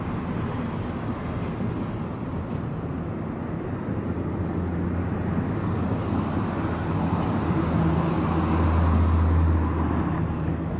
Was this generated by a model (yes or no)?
no